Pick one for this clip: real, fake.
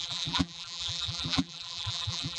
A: fake